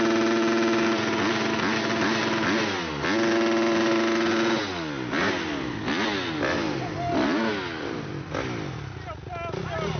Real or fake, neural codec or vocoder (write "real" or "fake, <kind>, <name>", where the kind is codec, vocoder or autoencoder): real